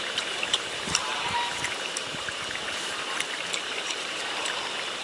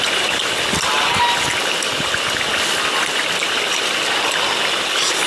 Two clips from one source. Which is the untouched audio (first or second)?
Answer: second